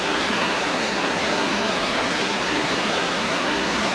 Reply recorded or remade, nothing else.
remade